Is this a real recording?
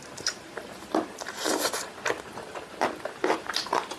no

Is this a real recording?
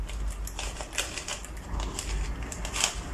yes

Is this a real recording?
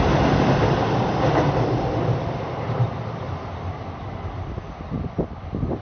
yes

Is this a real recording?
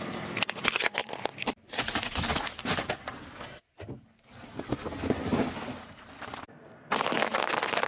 yes